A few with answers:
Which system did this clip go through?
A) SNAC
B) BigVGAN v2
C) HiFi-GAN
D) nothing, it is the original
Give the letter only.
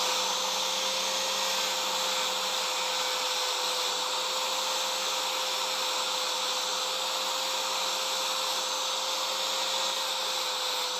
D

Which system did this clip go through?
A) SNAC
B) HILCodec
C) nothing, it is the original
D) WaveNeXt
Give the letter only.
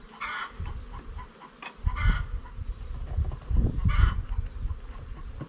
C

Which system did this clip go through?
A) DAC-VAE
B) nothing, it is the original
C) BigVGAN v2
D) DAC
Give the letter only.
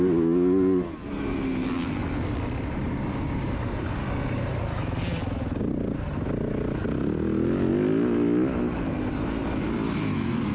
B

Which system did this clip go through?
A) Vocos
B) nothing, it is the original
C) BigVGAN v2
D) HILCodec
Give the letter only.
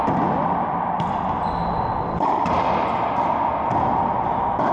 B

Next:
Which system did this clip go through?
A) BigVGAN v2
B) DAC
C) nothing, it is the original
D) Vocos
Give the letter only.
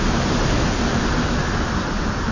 A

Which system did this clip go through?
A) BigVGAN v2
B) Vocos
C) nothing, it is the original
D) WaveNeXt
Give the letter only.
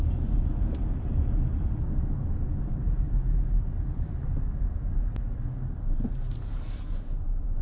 A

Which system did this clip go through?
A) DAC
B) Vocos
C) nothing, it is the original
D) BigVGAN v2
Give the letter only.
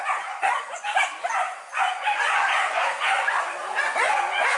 B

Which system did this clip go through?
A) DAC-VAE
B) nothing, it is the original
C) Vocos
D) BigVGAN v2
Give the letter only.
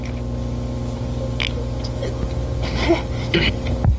B